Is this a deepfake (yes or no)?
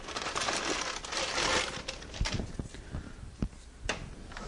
no